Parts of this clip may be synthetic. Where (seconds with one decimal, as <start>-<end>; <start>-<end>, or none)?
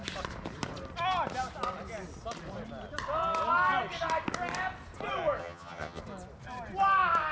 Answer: 5.4-6.0